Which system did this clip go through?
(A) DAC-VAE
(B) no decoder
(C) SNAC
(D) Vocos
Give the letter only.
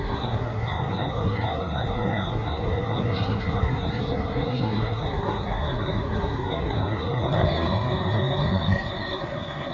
C